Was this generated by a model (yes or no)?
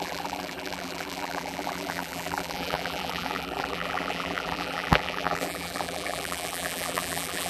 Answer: yes